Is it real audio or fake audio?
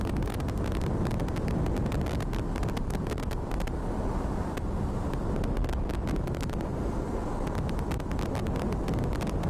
real